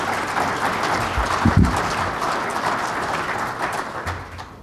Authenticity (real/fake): real